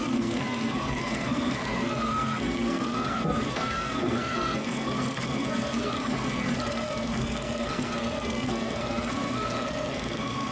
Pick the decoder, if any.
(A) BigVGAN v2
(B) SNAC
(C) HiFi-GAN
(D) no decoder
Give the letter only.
B